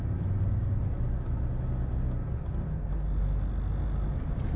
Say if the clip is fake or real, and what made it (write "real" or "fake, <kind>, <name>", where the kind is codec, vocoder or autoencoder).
real